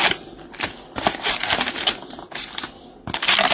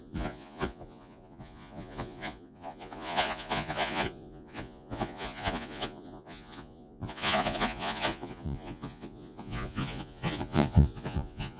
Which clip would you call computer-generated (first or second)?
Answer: second